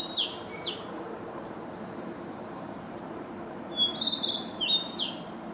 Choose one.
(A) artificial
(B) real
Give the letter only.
A